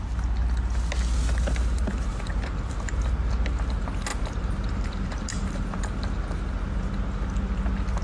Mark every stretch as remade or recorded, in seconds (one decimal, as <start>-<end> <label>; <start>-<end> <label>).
0.0-2.1 recorded; 2.1-3.1 remade; 3.1-4.1 recorded; 4.1-5.8 remade; 5.8-8.0 recorded